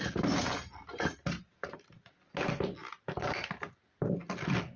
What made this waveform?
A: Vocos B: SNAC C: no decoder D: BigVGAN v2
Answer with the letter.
C